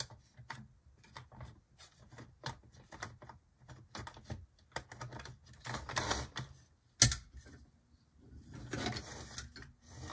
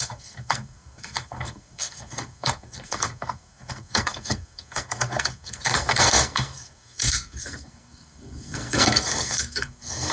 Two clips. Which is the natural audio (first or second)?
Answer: first